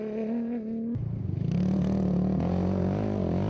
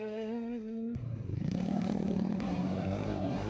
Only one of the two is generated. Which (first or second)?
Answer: second